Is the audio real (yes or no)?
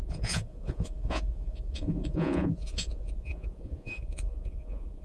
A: no